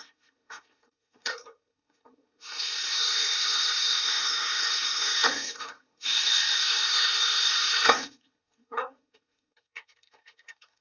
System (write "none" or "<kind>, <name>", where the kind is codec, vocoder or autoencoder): codec, SNAC